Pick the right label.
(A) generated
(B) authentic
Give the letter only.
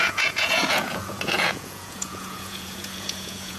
A